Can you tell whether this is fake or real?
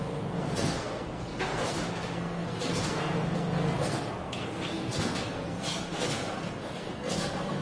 fake